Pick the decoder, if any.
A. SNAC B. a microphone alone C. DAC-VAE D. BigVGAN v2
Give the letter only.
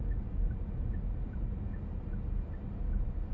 B